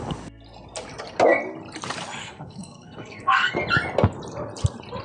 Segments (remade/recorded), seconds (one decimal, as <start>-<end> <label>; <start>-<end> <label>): 0.0-2.2 recorded; 2.2-3.5 remade; 3.5-5.0 recorded